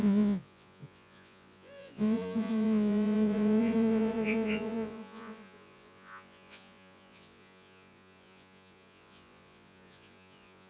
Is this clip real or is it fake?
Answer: fake